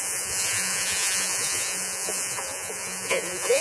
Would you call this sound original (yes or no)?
no